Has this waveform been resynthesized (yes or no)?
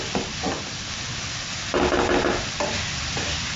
no